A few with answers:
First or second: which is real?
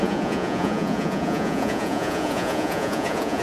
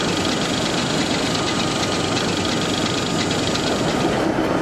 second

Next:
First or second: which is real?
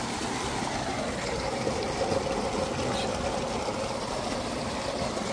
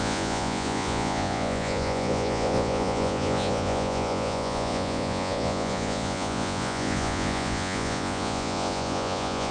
first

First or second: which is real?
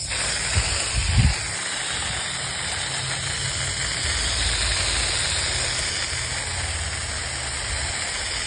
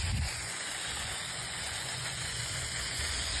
first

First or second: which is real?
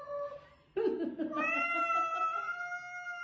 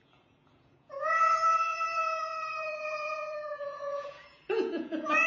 first